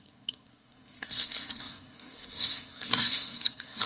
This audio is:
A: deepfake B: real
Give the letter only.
A